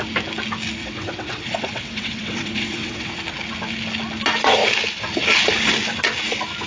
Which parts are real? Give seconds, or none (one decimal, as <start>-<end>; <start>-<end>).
0.0-0.8; 3.2-6.7

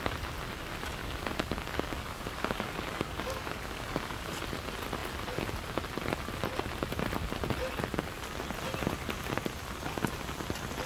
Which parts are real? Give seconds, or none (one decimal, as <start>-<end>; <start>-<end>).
0.0-1.0; 4.4-10.9

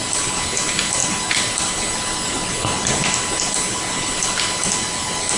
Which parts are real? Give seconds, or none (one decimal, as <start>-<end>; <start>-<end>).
0.0-5.4